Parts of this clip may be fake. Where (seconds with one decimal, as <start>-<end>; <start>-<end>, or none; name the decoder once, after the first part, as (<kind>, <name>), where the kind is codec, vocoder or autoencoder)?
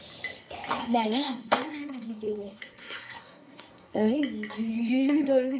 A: 0.8-4.2 (codec, SNAC); 4.7-5.6